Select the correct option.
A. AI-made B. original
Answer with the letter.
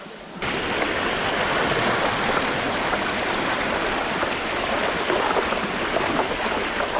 B